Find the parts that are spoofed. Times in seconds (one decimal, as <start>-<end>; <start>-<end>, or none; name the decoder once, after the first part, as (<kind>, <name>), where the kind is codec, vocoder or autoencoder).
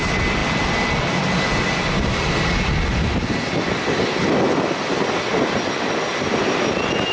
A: none